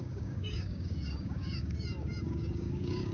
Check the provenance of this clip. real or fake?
fake